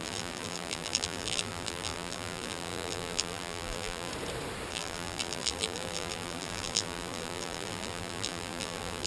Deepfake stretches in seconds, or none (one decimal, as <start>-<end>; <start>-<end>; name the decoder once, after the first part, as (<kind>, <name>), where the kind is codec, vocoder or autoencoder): 0.0-4.1 (vocoder, BigVGAN v2); 4.7-9.1